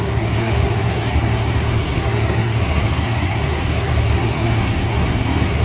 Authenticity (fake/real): fake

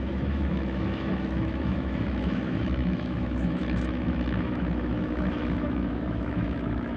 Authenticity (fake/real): fake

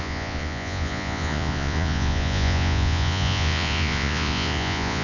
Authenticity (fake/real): fake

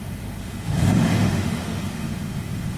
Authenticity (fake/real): fake